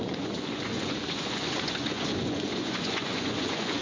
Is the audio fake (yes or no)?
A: yes